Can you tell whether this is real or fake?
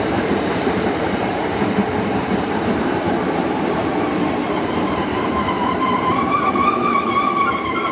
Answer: fake